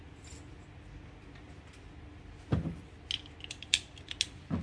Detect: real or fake real